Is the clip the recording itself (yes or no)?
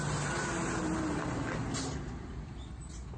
yes